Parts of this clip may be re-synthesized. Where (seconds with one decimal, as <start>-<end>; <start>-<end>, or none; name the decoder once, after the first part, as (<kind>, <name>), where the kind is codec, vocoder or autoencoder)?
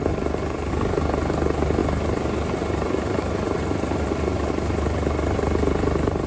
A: none